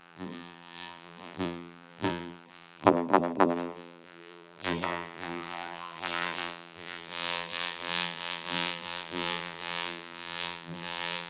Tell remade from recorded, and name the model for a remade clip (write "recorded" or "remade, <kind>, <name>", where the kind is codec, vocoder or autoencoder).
remade, vocoder, BigVGAN v2